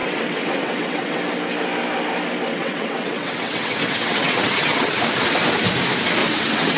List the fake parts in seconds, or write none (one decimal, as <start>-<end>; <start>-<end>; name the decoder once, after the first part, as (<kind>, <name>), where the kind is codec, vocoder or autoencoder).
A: 0.0-1.2 (vocoder, WaveNeXt); 2.5-5.0; 6.2-6.8